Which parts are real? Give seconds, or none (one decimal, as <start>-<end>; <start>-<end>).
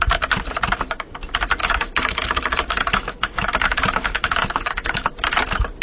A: 0.0-1.6; 5.1-5.8